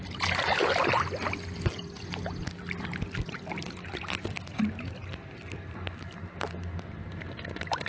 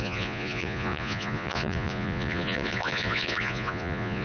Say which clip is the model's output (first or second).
second